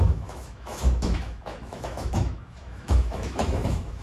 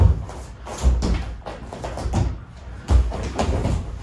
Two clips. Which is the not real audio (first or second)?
first